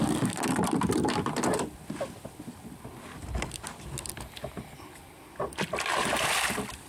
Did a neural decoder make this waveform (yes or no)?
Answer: no